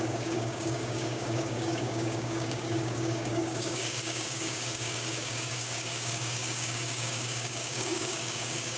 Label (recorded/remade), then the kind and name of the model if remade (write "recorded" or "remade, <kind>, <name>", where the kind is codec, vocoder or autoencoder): remade, codec, DAC